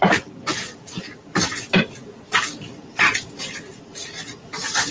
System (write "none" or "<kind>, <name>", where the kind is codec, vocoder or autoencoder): none